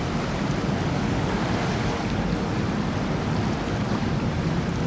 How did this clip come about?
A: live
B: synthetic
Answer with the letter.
A